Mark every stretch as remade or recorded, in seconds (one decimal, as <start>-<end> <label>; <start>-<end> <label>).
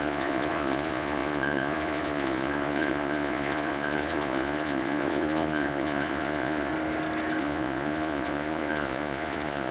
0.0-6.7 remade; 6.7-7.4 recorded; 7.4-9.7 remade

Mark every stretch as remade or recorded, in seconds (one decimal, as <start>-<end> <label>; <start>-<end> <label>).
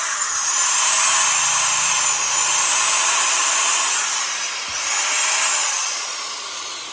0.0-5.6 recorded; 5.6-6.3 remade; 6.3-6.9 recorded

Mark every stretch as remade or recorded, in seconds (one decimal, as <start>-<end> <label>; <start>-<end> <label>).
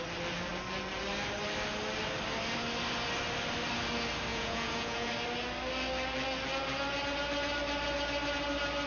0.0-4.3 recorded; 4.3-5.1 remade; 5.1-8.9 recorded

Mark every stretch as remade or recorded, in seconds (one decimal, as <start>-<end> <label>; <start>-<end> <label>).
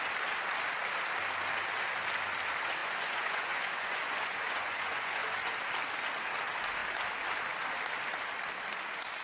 0.0-2.8 recorded; 2.8-5.5 remade; 5.5-9.2 recorded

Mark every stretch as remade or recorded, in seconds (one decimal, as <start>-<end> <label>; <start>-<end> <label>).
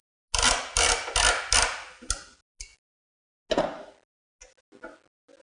0.0-5.5 recorded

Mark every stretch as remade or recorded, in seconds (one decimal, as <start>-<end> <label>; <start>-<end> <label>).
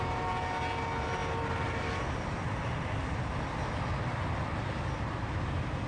0.0-5.9 recorded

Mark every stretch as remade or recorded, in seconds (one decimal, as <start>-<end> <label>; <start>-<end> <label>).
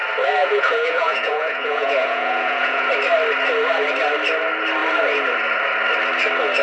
0.0-0.4 recorded; 0.4-2.9 remade; 2.9-6.6 recorded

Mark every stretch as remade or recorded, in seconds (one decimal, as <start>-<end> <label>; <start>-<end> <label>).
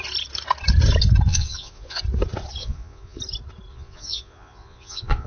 0.0-1.3 recorded; 1.3-2.0 remade; 2.0-2.6 recorded; 2.6-3.2 remade; 3.2-3.7 recorded; 3.7-5.3 remade